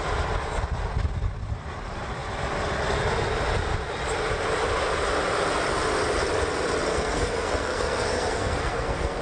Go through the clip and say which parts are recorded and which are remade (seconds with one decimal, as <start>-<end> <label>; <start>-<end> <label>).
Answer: 0.0-6.9 recorded; 6.9-9.2 remade